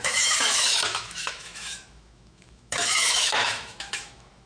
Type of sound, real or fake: fake